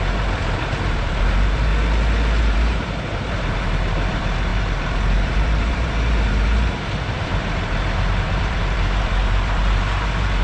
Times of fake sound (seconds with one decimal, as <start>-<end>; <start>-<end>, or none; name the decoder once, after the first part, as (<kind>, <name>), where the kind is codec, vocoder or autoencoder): 0.0-1.7 (vocoder, BigVGAN v2); 2.4-10.4